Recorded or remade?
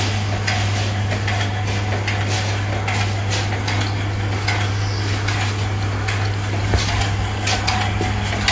recorded